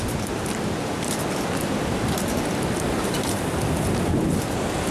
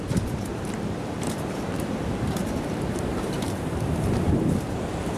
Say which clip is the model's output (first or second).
second